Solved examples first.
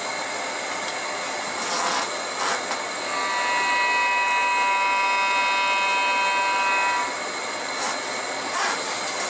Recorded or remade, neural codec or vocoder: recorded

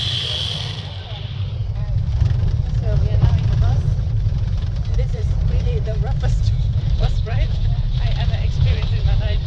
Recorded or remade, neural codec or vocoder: remade, vocoder, BigVGAN v2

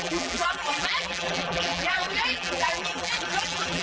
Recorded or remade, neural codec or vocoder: remade, vocoder, BigVGAN v2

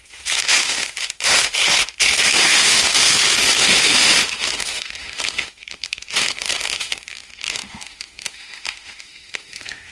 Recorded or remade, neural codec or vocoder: remade, autoencoder, DAC-VAE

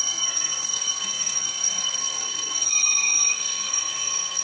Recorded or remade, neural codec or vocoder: remade, codec, SNAC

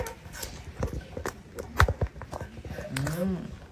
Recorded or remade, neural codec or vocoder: recorded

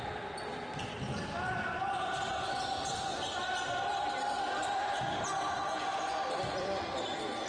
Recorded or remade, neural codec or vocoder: recorded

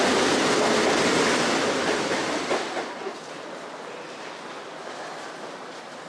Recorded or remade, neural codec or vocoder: recorded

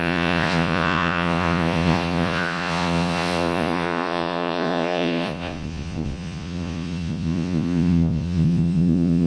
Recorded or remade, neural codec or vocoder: remade, vocoder, Vocos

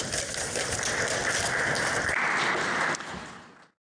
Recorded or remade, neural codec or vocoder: recorded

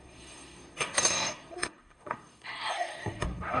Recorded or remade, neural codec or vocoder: remade, codec, SNAC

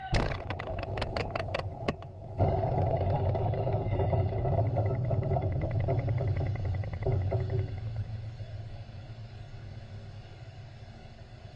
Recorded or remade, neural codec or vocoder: remade, codec, DAC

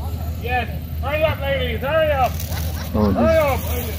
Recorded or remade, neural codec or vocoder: recorded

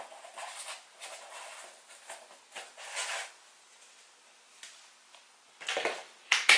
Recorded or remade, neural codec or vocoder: recorded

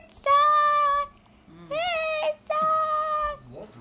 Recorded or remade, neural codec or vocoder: recorded